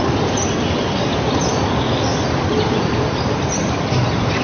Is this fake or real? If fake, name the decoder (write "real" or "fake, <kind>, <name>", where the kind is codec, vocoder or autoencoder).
real